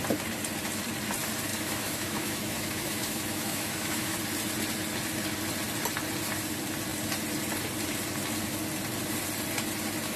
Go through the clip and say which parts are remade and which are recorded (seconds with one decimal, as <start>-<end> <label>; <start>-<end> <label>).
0.0-1.5 recorded; 1.5-4.2 remade; 4.2-10.2 recorded